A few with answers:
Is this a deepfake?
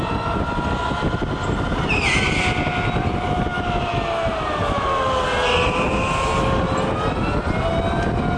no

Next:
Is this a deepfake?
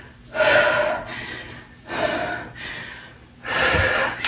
no